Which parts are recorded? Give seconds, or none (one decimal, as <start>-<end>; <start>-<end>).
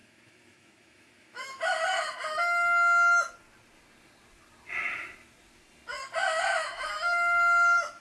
1.7-6.5